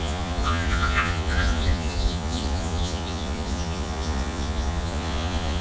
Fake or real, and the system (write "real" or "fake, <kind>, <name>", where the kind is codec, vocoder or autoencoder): fake, vocoder, Vocos